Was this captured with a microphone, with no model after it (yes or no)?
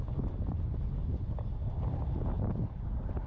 yes